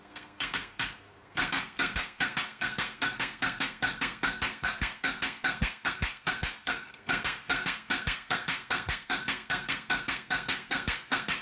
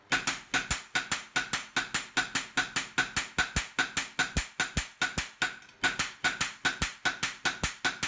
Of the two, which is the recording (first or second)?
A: second